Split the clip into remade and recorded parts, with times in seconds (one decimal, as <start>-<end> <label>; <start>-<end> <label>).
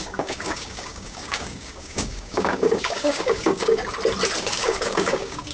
0.0-3.8 remade; 3.8-4.4 recorded; 4.4-5.5 remade